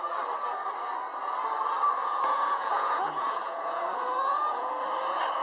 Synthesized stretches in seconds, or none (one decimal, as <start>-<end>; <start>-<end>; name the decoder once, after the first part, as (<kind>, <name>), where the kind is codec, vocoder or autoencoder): 2.0-4.7 (vocoder, Vocos)